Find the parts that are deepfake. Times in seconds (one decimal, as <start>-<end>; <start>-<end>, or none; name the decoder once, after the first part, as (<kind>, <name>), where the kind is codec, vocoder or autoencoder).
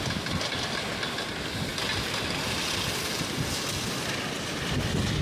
none